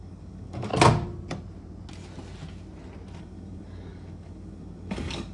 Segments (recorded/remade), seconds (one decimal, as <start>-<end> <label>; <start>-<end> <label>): 0.0-0.7 remade; 0.7-3.2 recorded; 3.2-5.3 remade

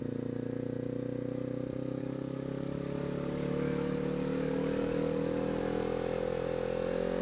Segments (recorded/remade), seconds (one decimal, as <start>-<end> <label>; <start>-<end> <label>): 0.0-2.0 recorded; 2.0-5.6 remade; 5.6-7.2 recorded

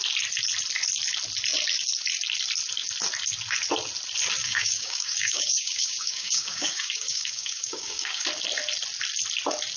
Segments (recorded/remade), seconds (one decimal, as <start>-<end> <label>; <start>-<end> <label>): 0.0-4.4 recorded; 4.4-8.2 remade; 8.2-9.8 recorded